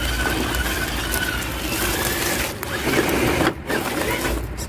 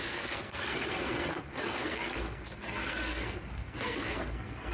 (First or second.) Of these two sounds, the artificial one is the second